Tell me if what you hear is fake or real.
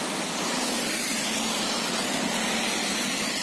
real